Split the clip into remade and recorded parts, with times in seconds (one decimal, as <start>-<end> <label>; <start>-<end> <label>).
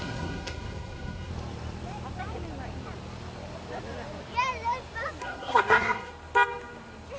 0.0-1.3 remade; 1.3-5.2 recorded; 5.2-6.1 remade; 6.1-7.2 recorded